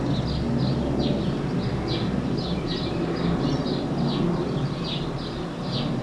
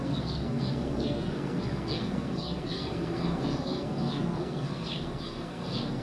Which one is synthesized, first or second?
second